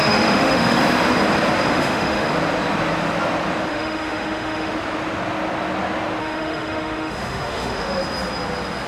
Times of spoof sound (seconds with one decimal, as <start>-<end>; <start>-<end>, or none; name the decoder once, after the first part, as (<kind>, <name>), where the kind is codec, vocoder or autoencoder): 0.0-0.8 (autoencoder, DAC-VAE); 1.7-2.3; 3.7-4.7; 6.2-8.0

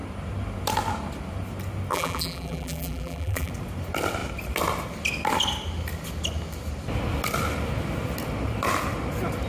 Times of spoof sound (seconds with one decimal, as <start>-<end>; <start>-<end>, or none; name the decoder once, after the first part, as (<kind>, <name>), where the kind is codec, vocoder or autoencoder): 1.9-3.5 (vocoder, BigVGAN v2)

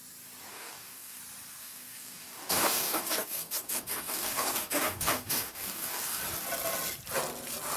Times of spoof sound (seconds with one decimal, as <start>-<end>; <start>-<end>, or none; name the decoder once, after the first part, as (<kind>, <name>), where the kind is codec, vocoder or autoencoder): 0.5-1.2 (codec, DAC); 1.6-6.2

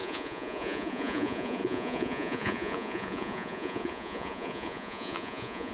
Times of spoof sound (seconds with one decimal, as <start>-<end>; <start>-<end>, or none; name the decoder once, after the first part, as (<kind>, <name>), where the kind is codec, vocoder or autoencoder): 0.0-5.7 (vocoder, Vocos)